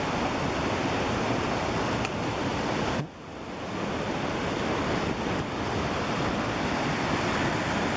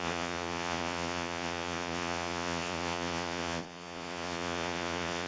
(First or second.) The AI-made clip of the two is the second